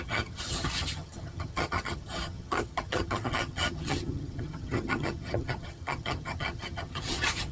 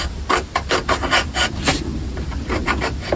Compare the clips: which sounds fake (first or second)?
first